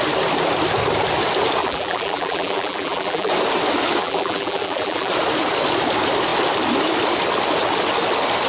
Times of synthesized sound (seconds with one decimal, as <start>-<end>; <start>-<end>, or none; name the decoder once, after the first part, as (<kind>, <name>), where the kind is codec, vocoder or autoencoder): 1.6-3.3 (vocoder, BigVGAN v2); 4.0-5.1